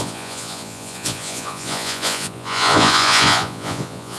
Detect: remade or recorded remade